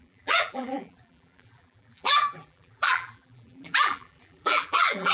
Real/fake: fake